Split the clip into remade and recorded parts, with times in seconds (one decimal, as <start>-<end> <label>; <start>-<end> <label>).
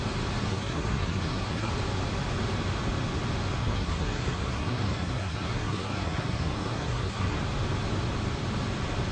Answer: 0.0-0.4 recorded; 0.4-1.7 remade; 1.7-3.6 recorded; 3.6-7.4 remade; 7.4-9.1 recorded